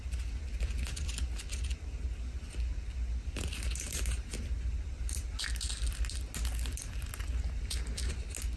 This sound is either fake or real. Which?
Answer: real